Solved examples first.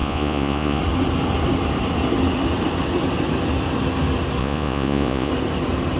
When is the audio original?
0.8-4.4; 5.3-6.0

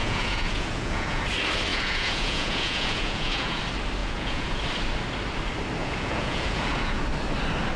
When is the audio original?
1.2-1.7; 3.6-4.0; 4.6-5.8; 7.0-7.8

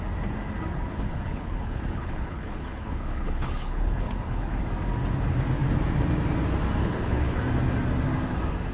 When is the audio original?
0.0-0.9; 4.6-6.8; 7.4-8.7

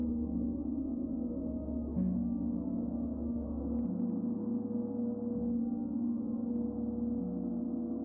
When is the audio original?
3.6-5.6; 6.5-8.0